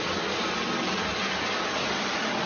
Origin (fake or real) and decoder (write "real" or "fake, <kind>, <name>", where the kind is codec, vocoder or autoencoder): real